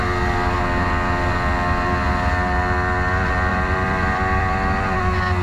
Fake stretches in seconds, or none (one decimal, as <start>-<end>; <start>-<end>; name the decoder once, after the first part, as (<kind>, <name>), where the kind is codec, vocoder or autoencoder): 3.5-5.0 (vocoder, BigVGAN v2)